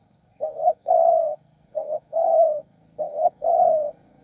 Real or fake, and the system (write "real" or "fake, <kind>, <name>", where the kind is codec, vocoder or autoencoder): fake, codec, SNAC